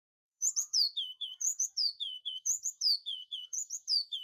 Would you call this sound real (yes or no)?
no